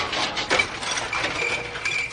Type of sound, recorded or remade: recorded